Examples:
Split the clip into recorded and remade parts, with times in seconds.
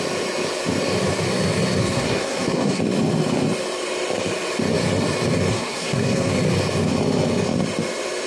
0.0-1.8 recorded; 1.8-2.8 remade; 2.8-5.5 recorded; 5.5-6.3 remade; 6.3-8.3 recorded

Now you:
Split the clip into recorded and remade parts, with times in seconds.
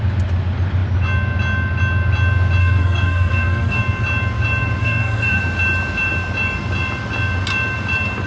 0.0-2.6 recorded; 2.6-3.8 remade; 3.8-4.8 recorded; 4.8-5.4 remade; 5.4-8.3 recorded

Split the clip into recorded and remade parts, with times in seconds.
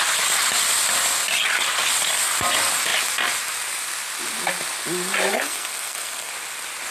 0.0-5.3 recorded; 5.3-6.3 remade; 6.3-6.9 recorded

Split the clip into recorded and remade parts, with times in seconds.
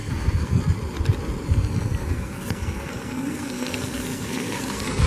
0.0-0.6 remade; 0.6-2.0 recorded; 2.0-5.1 remade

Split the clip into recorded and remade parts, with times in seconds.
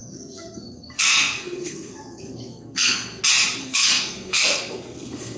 0.0-3.2 remade; 3.2-3.6 recorded; 3.6-5.4 remade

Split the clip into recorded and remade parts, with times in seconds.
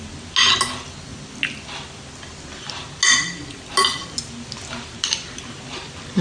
0.0-6.2 recorded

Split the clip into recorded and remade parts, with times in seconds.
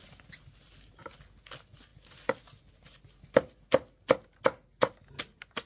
0.0-5.7 recorded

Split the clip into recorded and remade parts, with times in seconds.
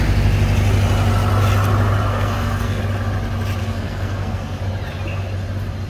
0.0-2.1 recorded; 2.1-2.8 remade; 2.8-3.6 recorded; 3.6-4.6 remade; 4.6-5.9 recorded